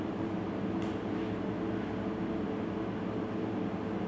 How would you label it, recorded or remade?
recorded